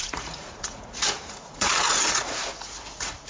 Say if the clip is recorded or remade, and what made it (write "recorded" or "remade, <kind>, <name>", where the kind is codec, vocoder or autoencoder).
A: remade, vocoder, Vocos